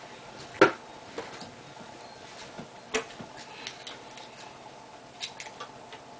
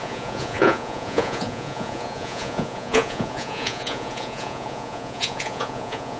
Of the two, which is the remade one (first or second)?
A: second